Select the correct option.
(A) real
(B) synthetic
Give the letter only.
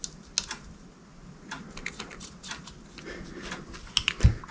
A